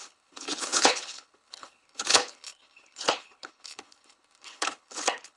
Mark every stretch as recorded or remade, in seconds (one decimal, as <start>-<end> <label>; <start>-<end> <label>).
0.0-5.4 remade